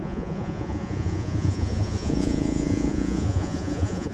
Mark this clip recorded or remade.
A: remade